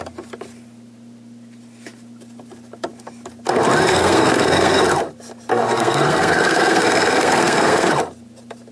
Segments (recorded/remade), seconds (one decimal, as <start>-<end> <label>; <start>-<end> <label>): 0.0-3.9 recorded; 3.9-4.8 remade; 4.8-5.5 recorded; 5.5-7.9 remade; 7.9-8.7 recorded